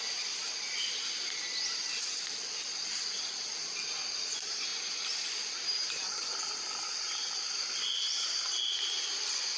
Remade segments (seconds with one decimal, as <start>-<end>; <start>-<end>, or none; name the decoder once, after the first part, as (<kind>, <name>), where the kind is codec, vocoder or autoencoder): none